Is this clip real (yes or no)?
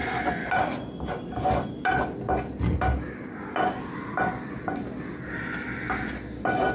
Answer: yes